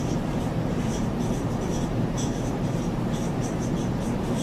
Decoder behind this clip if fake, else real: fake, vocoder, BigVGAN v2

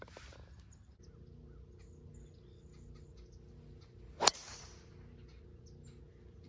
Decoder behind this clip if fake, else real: real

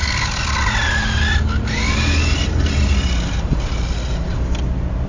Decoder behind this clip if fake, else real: real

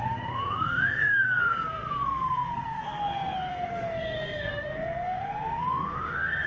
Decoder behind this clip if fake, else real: fake, codec, SNAC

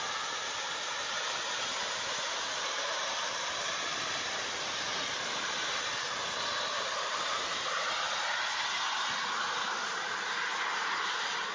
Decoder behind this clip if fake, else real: real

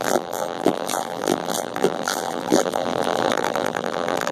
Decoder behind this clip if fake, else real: fake, vocoder, BigVGAN v2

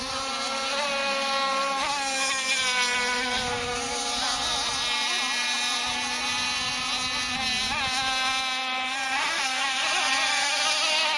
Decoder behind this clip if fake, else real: real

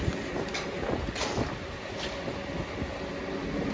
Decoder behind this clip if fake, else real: real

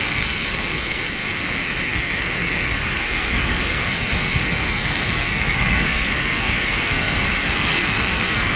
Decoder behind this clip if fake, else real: fake, codec, SNAC